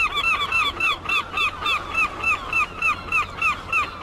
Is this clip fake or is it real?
real